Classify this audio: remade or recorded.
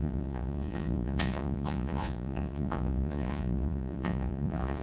remade